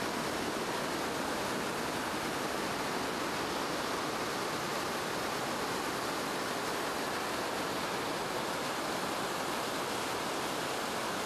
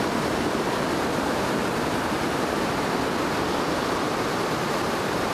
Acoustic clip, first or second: first